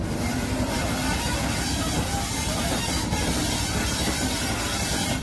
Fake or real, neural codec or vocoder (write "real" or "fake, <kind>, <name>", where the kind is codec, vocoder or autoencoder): real